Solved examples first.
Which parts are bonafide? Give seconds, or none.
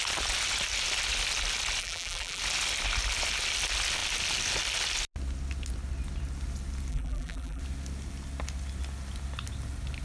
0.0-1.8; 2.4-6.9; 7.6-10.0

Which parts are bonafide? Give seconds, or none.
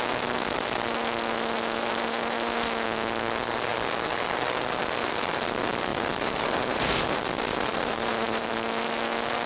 0.0-5.9; 8.5-9.5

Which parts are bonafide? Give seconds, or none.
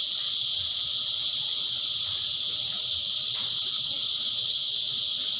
0.0-1.3; 4.5-5.4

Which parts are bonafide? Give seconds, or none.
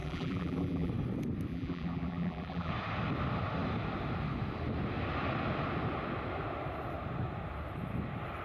0.9-1.5; 2.7-8.4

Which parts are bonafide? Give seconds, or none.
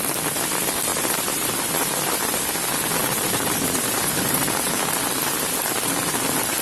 0.0-0.9; 1.7-3.0; 4.8-6.6